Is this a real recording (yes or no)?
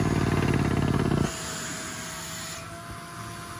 yes